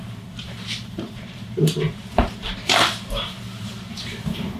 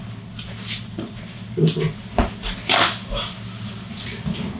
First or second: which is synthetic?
first